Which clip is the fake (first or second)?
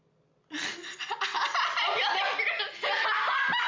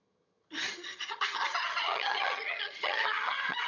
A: second